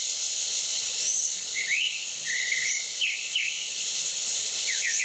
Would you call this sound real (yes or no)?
no